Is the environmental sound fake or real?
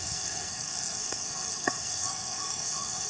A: fake